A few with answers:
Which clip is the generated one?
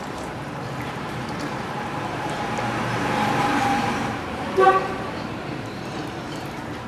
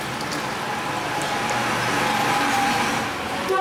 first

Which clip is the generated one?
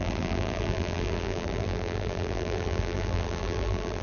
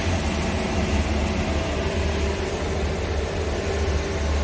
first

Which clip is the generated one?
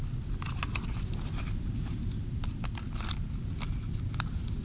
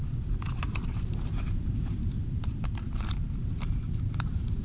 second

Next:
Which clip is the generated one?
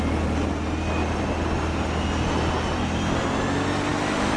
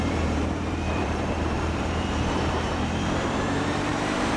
second